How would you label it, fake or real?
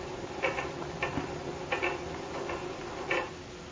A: real